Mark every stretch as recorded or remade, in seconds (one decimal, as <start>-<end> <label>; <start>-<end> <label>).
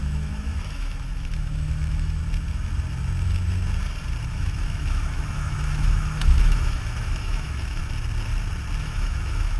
0.0-2.2 remade; 2.2-4.3 recorded; 4.3-7.8 remade; 7.8-8.8 recorded; 8.8-9.6 remade